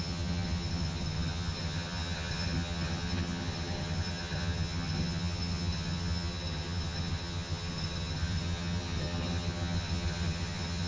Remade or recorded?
remade